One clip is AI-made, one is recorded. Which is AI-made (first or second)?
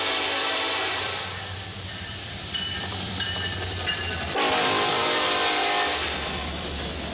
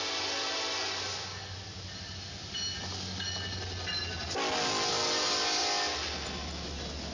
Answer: first